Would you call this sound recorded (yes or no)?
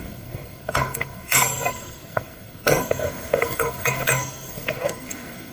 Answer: no